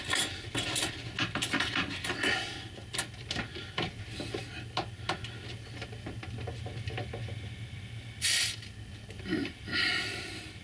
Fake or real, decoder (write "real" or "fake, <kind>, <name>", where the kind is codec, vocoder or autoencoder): real